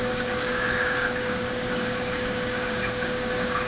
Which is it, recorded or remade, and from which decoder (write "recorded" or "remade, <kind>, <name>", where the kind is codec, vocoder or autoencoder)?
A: remade, codec, DAC